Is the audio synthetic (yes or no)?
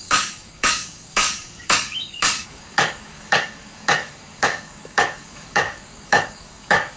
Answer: yes